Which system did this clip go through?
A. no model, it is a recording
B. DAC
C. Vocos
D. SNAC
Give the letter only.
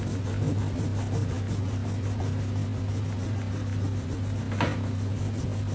A